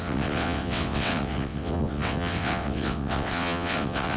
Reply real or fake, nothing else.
fake